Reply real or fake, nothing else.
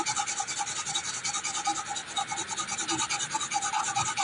real